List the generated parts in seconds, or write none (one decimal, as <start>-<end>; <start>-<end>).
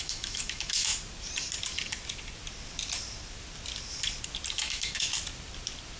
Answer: 0.0-0.9; 4.5-5.1